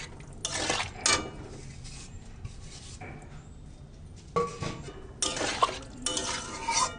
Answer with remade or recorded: recorded